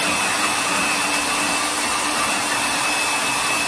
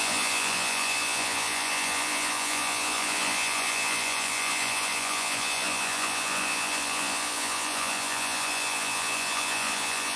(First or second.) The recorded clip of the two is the first